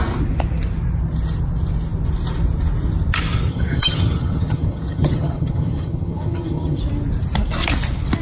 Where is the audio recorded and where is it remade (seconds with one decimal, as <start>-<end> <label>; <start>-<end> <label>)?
0.0-3.5 recorded; 3.5-6.8 remade; 6.8-8.2 recorded